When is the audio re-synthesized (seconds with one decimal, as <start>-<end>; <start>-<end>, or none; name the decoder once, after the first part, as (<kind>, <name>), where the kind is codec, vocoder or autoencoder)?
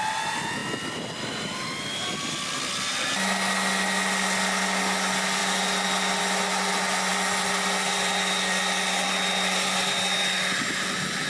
none